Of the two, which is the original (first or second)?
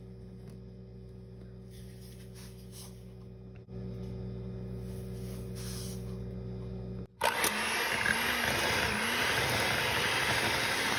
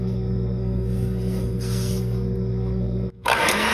first